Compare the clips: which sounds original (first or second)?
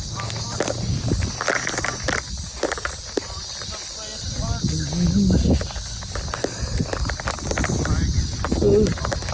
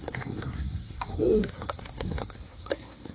first